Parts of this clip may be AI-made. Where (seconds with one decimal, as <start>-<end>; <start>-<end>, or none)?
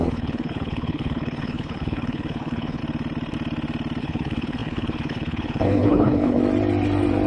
0.0-2.8; 4.0-6.4